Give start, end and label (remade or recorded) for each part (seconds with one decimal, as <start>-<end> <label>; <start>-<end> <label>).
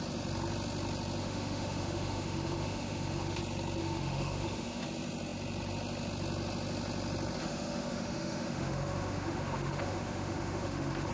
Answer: 0.0-1.2 recorded; 1.2-3.4 remade; 3.4-3.8 recorded; 3.8-4.8 remade; 4.8-7.4 recorded; 7.4-11.1 remade